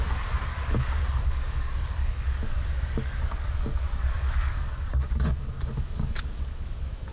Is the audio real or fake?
fake